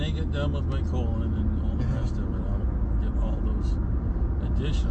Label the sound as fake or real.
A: real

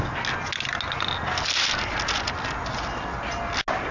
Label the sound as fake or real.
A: real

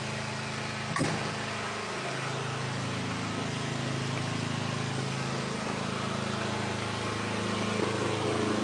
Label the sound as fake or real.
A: real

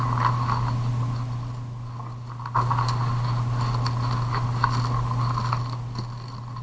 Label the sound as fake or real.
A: real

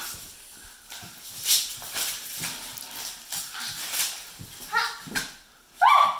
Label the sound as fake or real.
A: real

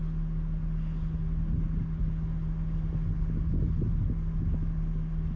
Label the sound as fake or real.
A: real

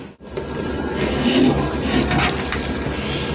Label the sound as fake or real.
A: real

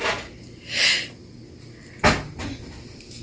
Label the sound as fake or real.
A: real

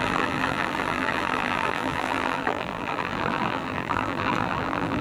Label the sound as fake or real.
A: fake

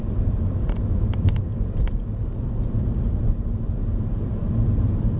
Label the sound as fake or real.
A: fake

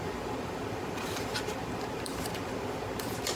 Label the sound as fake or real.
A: fake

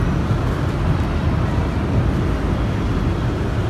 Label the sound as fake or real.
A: real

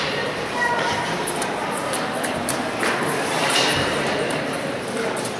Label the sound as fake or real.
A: fake